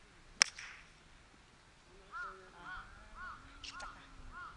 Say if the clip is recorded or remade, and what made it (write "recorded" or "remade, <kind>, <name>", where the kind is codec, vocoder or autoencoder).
recorded